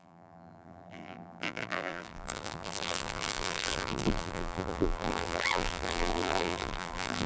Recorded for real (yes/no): no